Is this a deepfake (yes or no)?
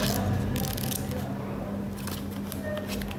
no